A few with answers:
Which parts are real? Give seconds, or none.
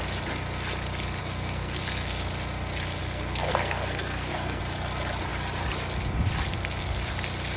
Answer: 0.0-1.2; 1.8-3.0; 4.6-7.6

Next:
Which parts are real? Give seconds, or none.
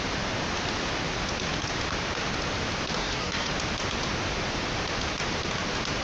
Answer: 0.0-3.0; 3.5-6.0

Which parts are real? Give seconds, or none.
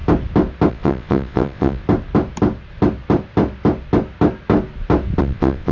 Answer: 0.0-0.7; 1.8-5.2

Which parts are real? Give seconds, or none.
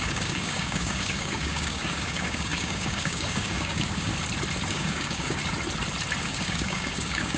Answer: 4.1-4.7; 5.4-6.2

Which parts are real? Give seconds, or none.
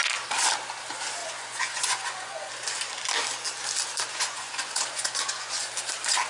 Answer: 0.0-1.2; 2.5-4.1; 5.7-6.3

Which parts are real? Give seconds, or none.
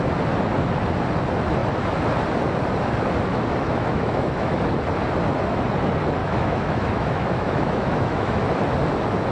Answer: 0.0-3.3; 4.6-6.2; 8.4-9.3